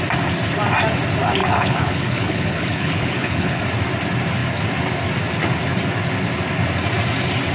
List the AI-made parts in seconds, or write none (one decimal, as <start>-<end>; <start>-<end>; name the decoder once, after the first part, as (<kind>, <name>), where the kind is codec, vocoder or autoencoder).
1.4-3.6 (codec, HILCodec)